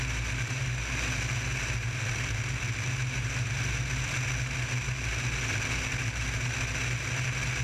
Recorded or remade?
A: recorded